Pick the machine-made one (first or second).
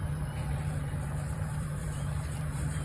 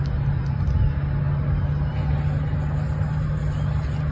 first